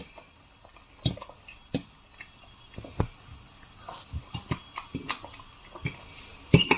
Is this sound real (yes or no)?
yes